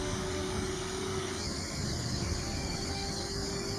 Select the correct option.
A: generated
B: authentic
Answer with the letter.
A